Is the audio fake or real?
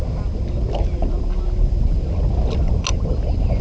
real